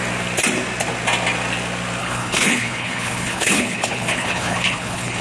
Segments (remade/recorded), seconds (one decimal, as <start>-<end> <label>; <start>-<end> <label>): 0.0-2.0 recorded; 2.0-5.2 remade